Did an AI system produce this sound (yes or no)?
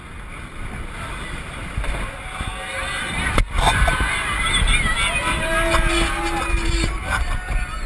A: no